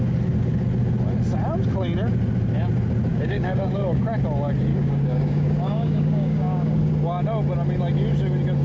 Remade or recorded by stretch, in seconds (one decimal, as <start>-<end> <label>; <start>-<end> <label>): 0.0-3.1 recorded; 3.1-4.0 remade; 4.0-4.7 recorded; 4.7-6.9 remade; 6.9-8.6 recorded